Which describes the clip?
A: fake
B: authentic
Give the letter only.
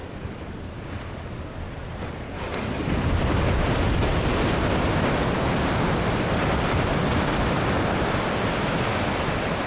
B